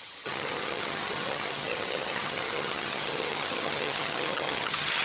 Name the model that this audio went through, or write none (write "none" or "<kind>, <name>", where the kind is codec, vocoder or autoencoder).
vocoder, HiFi-GAN